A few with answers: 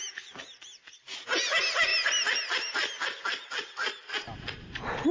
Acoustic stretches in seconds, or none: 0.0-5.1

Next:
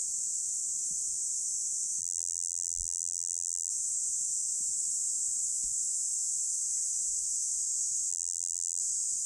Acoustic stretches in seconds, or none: 0.0-2.0; 3.7-8.1; 8.8-9.3